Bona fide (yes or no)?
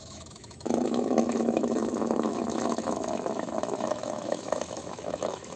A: no